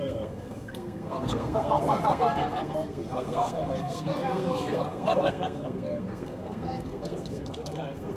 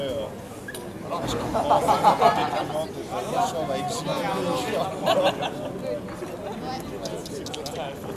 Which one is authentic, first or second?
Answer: second